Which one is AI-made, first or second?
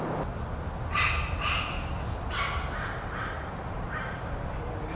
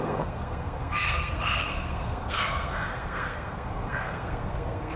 second